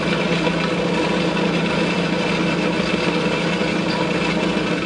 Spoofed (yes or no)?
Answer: no